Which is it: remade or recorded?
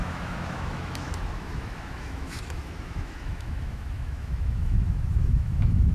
remade